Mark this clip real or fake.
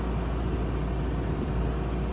real